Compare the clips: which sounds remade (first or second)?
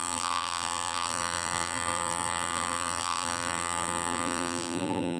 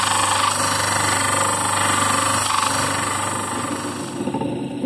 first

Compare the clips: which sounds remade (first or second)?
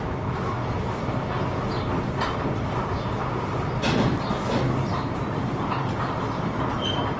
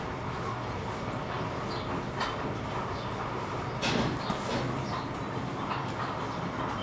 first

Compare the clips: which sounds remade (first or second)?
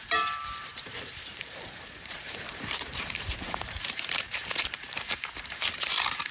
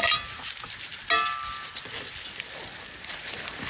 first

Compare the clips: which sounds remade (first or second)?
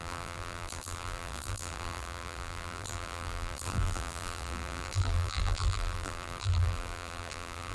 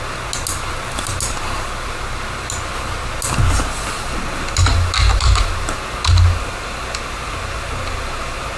first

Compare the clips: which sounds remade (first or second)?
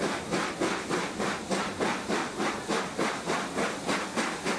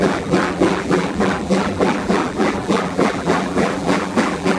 second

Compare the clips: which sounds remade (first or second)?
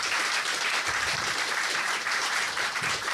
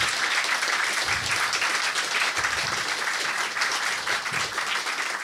first